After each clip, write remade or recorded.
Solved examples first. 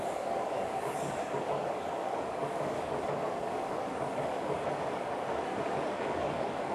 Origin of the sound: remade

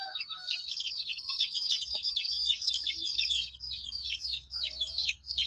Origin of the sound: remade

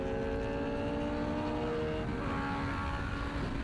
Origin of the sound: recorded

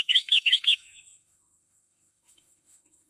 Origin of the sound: remade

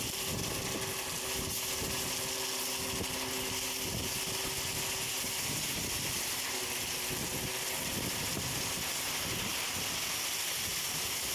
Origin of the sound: recorded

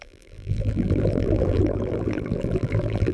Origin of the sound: remade